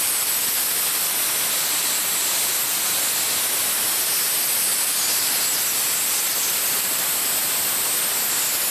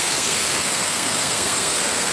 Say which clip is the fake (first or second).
second